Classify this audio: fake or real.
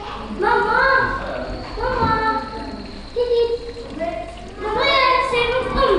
real